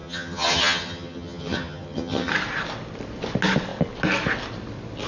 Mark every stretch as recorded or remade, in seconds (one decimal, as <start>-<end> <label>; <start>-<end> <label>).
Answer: 0.0-2.3 remade; 2.3-5.1 recorded